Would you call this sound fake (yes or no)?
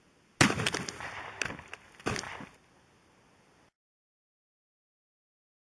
no